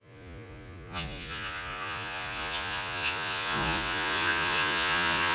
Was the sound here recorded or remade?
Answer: remade